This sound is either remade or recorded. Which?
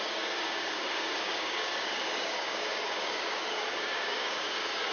remade